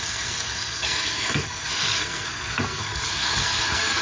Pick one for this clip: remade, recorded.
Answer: remade